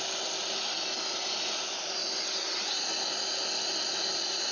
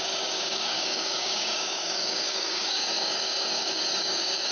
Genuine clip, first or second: first